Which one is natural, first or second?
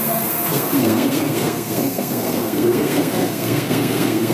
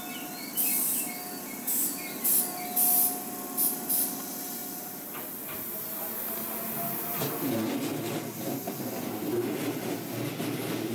second